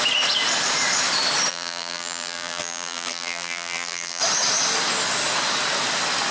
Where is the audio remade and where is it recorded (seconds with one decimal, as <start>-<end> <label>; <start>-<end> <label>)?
0.0-1.5 recorded; 1.5-4.2 remade; 4.2-6.3 recorded